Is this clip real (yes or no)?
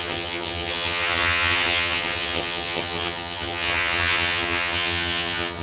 no